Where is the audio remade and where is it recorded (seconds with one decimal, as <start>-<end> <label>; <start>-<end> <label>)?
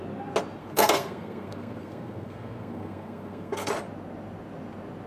0.0-0.6 recorded; 0.6-3.7 remade; 3.7-5.1 recorded